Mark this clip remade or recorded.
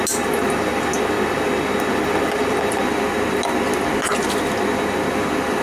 recorded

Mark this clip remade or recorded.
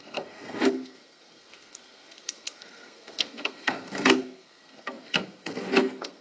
remade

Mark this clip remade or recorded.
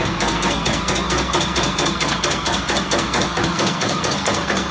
remade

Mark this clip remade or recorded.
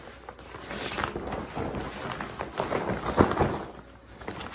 recorded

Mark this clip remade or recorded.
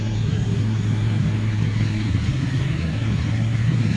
remade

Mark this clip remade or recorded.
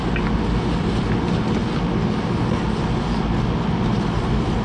recorded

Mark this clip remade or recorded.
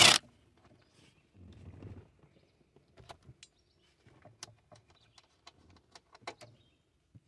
recorded